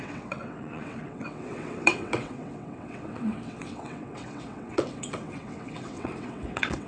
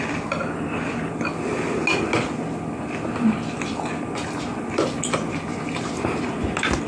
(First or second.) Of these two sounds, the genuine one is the second